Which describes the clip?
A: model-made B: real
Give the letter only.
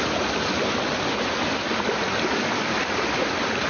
B